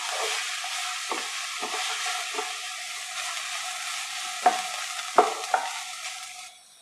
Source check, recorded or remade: recorded